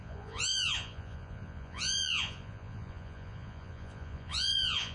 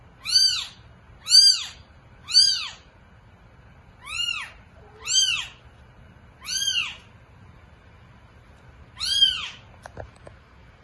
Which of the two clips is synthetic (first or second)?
first